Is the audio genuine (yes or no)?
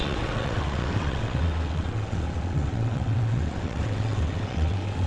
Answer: no